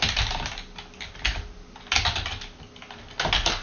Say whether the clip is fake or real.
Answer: real